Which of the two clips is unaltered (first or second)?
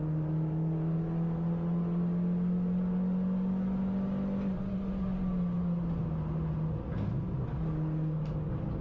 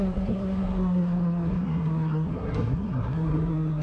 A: first